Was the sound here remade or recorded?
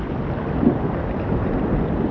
recorded